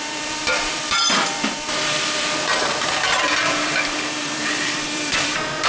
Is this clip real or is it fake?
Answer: fake